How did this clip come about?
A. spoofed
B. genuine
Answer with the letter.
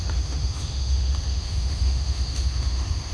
A